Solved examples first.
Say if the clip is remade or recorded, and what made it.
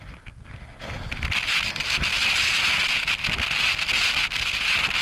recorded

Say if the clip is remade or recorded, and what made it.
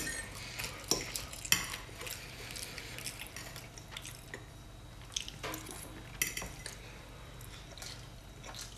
recorded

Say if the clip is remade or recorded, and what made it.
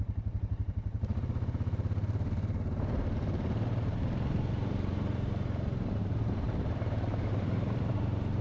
remade, vocoder, BigVGAN v2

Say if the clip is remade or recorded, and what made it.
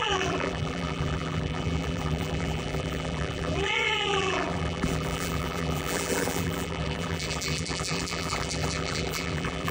remade, vocoder, BigVGAN v2